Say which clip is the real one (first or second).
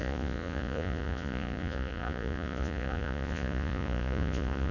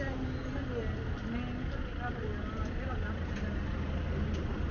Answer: second